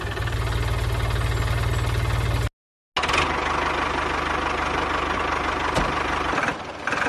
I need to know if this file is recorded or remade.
recorded